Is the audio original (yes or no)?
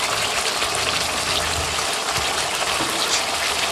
yes